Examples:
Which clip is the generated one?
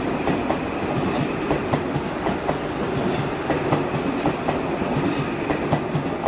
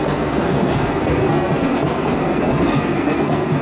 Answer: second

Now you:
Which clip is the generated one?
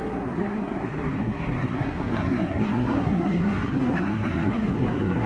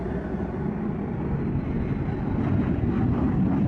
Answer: first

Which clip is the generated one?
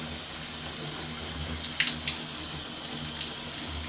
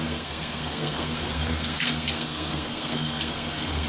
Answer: second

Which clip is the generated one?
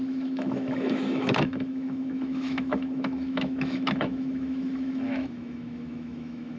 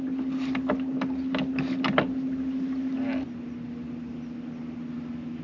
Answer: first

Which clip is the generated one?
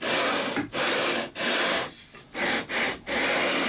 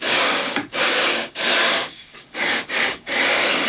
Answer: second